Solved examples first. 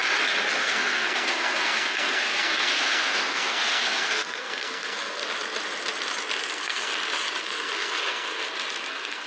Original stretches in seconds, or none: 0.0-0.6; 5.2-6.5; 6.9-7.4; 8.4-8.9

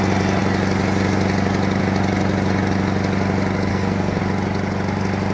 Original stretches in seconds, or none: 0.0-3.7; 4.2-5.3

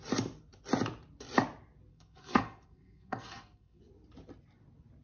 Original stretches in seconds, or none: 0.0-1.9; 3.8-5.0

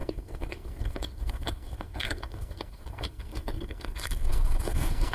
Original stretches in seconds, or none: none

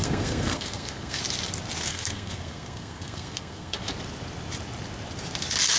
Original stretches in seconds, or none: 1.2-1.9; 3.9-5.8

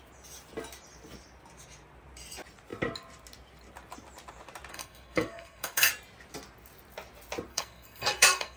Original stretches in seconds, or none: 0.0-4.7; 5.9-7.5

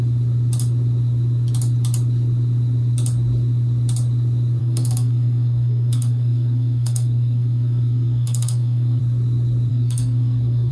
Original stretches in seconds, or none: 0.0-4.6; 9.0-9.7